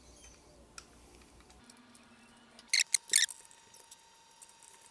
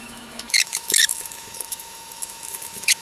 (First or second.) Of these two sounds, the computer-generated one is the second